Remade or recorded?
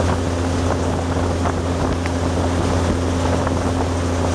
recorded